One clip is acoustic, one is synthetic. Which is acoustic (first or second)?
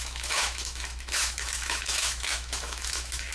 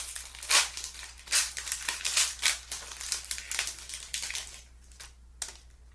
second